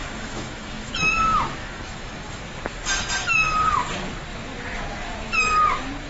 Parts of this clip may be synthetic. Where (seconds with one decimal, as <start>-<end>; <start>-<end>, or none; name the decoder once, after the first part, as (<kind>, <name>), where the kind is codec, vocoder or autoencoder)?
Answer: 0.0-0.9 (autoencoder, DAC-VAE); 1.6-2.4